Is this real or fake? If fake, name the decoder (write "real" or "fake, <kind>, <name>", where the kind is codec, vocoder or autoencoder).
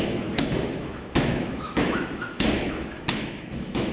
fake, autoencoder, DAC-VAE